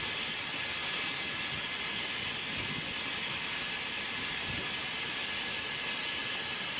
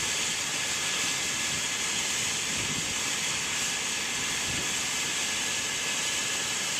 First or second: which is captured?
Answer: first